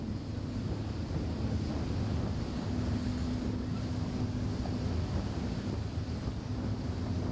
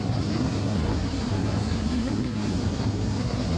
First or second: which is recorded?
first